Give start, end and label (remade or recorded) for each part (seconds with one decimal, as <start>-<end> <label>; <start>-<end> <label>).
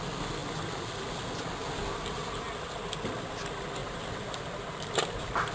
0.0-5.5 recorded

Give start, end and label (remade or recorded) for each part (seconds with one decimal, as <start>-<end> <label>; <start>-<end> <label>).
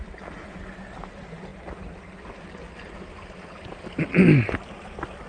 0.0-5.3 recorded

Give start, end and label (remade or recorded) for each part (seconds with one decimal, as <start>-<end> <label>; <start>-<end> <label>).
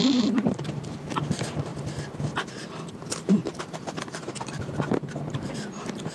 0.0-1.7 remade; 1.7-2.9 recorded; 2.9-3.4 remade; 3.4-4.5 recorded; 4.5-6.1 remade